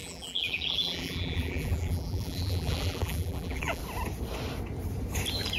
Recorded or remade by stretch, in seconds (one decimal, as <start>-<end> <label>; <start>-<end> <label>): 0.0-3.8 remade; 3.8-5.6 recorded